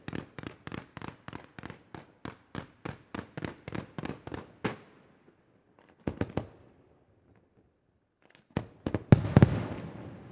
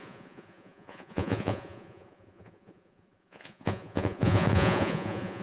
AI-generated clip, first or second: second